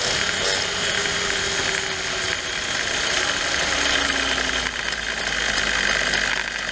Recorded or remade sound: recorded